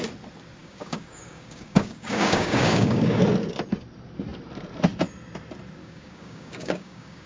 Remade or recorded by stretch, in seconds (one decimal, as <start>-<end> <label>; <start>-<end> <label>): 0.0-0.6 recorded; 0.6-3.2 remade; 3.2-5.8 recorded; 5.8-7.3 remade